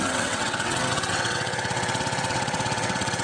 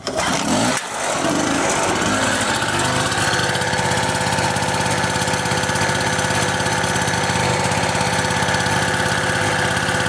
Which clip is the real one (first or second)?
second